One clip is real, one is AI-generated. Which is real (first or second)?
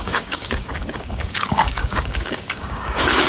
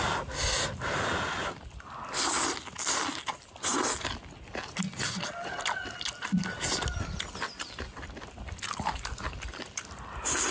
second